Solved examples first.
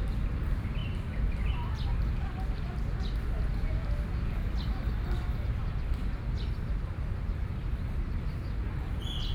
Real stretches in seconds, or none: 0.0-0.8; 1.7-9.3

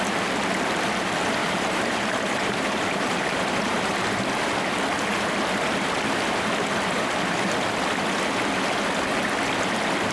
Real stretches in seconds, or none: 0.0-1.4; 3.9-10.1

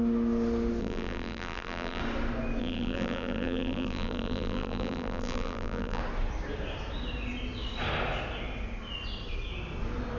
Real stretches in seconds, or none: 0.0-0.8; 2.0-2.6; 6.0-10.2

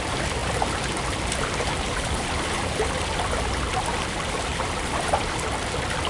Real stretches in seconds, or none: 0.0-0.4; 2.9-4.5; 5.1-6.1

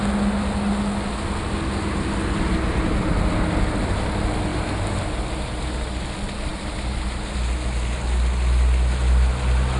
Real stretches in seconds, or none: 0.0-4.5; 5.1-9.8